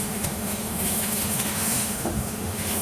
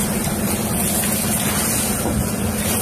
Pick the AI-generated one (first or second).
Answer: first